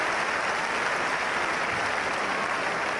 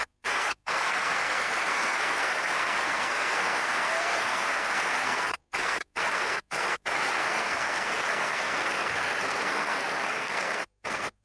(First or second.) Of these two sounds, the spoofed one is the second